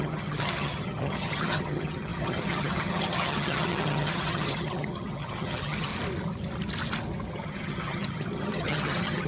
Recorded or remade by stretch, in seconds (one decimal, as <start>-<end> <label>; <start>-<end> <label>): 0.0-5.9 remade; 5.9-7.3 recorded; 7.3-9.3 remade